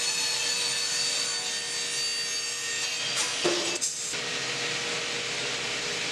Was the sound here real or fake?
real